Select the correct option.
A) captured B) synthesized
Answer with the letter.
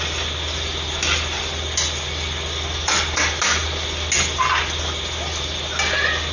A